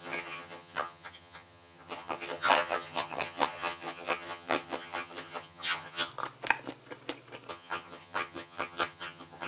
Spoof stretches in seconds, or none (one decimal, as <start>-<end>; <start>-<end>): 0.0-6.1; 7.5-9.5